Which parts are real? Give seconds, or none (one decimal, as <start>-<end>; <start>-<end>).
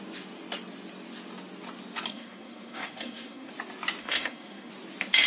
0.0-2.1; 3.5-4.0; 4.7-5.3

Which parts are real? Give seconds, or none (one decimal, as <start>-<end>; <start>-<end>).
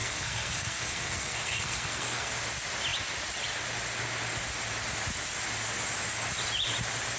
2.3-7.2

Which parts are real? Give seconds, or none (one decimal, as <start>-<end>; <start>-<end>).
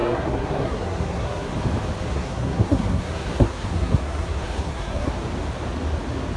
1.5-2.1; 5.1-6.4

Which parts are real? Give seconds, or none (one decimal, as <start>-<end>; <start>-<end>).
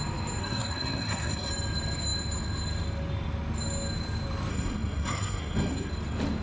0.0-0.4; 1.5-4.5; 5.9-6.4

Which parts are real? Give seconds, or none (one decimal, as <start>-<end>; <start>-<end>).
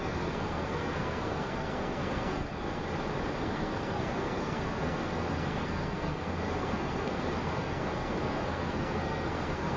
2.8-3.4